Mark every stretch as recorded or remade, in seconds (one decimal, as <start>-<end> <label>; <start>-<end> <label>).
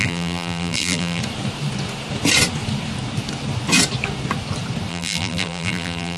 0.0-1.2 remade; 1.2-4.9 recorded; 4.9-6.2 remade